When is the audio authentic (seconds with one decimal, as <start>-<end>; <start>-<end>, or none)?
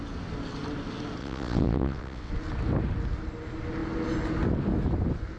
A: 0.0-1.2; 2.3-5.4